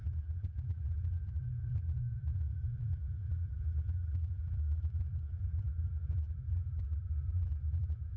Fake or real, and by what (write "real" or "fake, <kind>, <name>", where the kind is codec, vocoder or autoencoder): fake, vocoder, BigVGAN v2